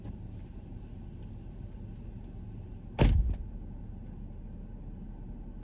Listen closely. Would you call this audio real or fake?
real